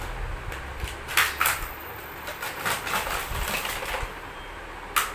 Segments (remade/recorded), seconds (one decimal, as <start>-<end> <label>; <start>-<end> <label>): 0.0-5.1 recorded